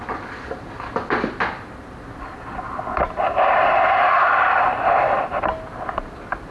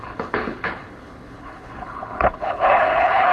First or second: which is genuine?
first